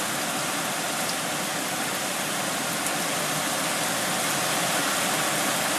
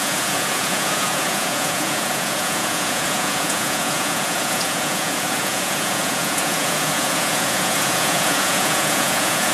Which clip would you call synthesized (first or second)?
second